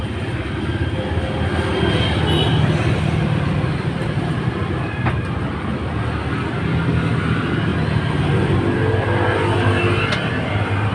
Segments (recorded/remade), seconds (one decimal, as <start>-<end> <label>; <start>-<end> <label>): 0.0-2.4 recorded; 2.4-5.9 remade; 5.9-10.9 recorded